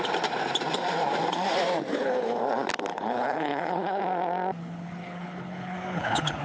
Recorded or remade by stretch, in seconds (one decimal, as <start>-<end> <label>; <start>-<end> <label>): 0.0-1.9 recorded; 1.9-2.4 remade; 2.4-2.9 recorded; 2.9-4.0 remade; 4.0-4.6 recorded; 4.6-6.4 remade